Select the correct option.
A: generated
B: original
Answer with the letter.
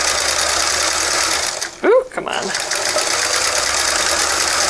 B